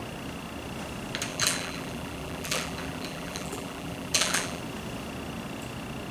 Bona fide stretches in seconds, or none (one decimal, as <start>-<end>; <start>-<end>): 0.0-1.3; 4.6-6.1